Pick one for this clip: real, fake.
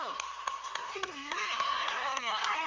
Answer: fake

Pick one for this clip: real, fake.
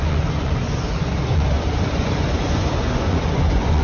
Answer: fake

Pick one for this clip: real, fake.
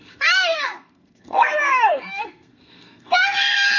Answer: fake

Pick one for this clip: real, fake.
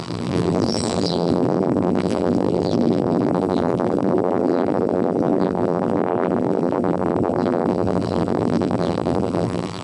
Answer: fake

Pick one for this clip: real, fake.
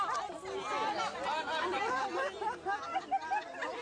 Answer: real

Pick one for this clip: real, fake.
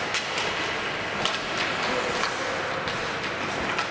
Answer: real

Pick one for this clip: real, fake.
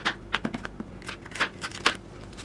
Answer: real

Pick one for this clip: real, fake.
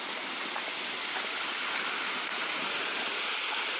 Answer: real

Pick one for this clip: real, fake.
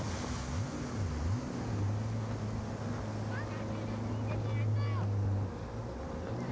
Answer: real